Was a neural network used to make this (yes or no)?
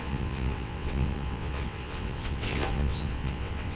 yes